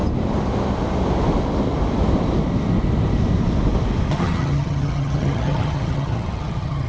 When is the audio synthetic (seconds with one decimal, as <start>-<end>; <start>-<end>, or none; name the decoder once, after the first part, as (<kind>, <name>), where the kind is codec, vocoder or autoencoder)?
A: 4.1-6.9 (vocoder, HiFi-GAN)